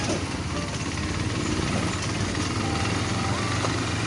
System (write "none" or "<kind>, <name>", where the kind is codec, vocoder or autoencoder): none